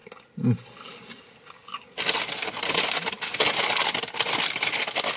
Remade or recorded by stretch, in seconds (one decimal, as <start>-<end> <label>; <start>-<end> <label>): 0.0-5.2 recorded